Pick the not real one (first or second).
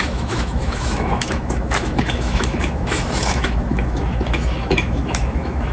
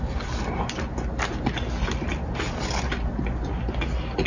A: first